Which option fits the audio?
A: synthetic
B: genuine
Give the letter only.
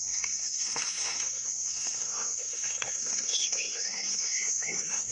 A